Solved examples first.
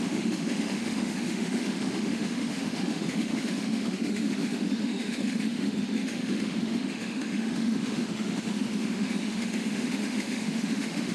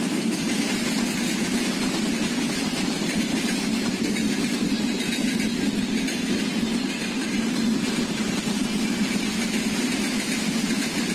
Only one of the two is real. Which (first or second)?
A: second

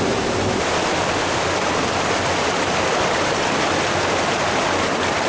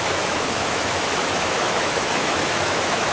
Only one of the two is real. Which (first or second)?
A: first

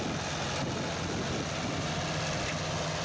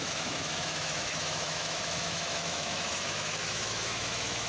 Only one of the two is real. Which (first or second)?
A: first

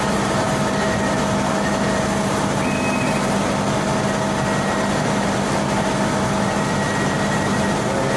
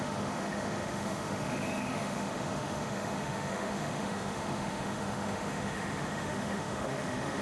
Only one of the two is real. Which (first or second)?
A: first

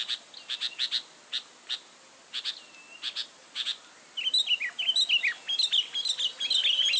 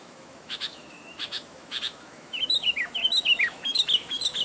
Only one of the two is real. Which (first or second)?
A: first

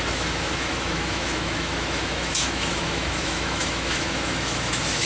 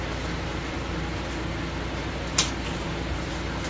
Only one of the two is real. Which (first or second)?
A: second